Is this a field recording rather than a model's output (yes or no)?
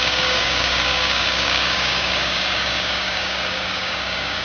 no